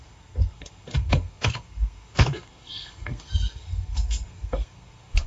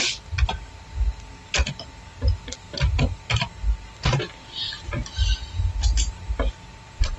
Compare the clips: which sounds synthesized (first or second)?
first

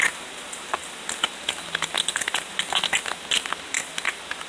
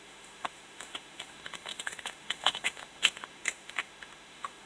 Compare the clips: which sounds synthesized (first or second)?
second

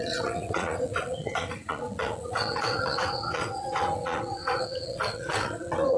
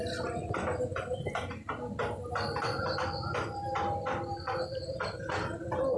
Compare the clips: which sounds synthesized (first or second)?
first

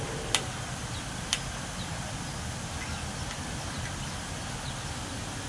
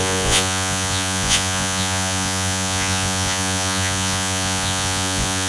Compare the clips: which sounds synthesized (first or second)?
second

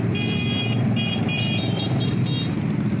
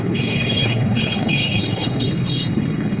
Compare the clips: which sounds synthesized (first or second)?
second